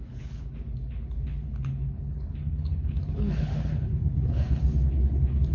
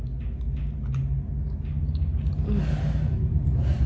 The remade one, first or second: first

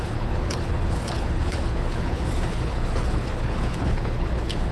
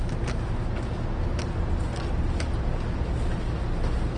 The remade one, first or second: first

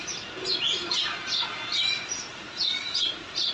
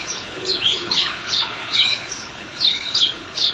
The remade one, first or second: second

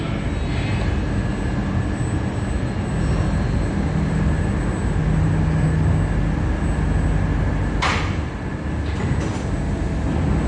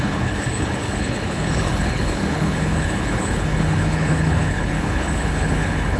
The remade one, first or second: second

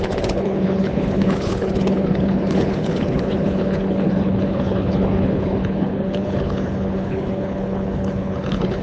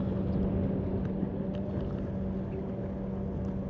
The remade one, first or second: first